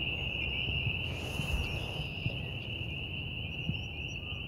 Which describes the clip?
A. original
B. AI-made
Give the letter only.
A